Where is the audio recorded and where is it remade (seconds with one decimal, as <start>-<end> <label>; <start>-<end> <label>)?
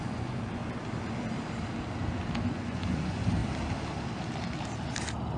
0.0-0.6 remade; 0.6-2.5 recorded; 2.5-3.4 remade; 3.4-5.4 recorded